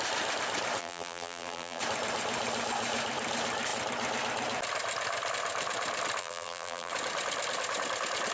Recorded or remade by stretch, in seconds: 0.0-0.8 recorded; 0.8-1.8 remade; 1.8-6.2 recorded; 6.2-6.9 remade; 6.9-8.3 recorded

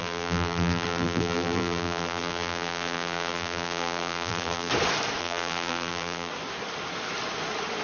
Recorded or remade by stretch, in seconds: 0.0-4.7 remade; 4.7-5.2 recorded; 5.2-6.3 remade; 6.3-7.8 recorded

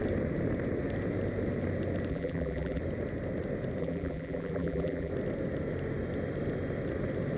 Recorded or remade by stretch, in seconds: 0.0-2.1 recorded; 2.1-2.8 remade; 2.8-3.8 recorded; 3.8-5.1 remade; 5.1-7.4 recorded

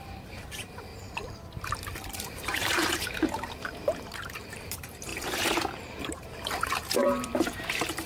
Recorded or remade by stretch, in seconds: 0.0-8.1 remade

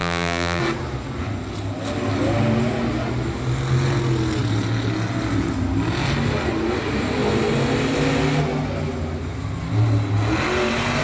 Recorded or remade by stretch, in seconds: 0.0-0.6 remade; 0.6-11.0 recorded

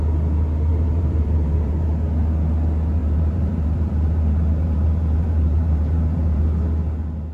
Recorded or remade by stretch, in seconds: 0.0-0.7 recorded; 0.7-1.9 remade; 1.9-3.0 recorded; 3.0-6.4 remade; 6.4-7.3 recorded

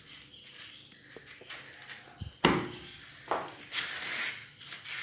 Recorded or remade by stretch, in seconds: 0.0-5.0 recorded